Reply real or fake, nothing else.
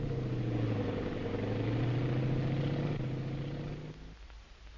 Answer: real